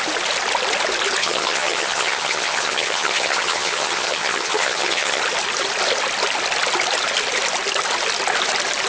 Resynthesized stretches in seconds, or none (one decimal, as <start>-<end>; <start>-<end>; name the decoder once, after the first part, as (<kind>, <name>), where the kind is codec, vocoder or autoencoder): 1.2-5.2 (vocoder, HiFi-GAN)